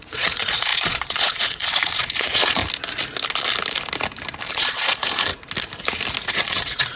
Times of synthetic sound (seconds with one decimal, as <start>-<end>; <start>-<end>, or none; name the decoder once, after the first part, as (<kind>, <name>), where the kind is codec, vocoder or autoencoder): 0.0-2.6 (vocoder, Vocos); 4.5-5.3; 6.3-7.0